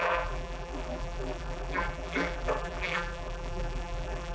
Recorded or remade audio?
remade